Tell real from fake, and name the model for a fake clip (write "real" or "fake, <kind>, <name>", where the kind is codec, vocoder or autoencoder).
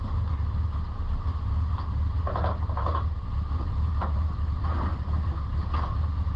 real